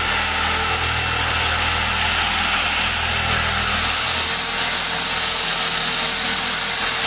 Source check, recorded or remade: recorded